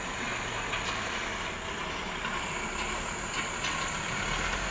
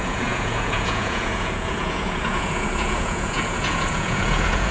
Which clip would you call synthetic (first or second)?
second